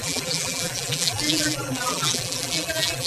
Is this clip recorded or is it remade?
remade